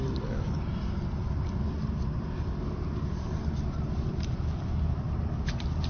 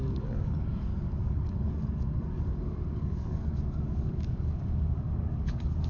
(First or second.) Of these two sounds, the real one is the first